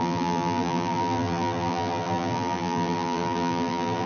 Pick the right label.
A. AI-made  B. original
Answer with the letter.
A